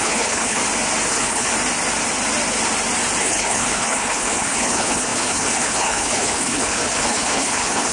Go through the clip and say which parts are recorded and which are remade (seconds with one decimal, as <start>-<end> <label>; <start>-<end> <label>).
0.0-0.6 remade; 0.6-1.1 recorded; 1.1-1.5 remade; 1.5-3.2 recorded; 3.2-7.9 remade